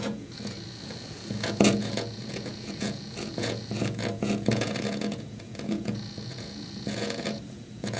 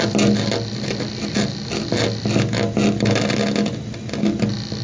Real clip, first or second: second